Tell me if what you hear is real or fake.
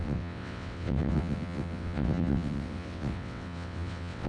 fake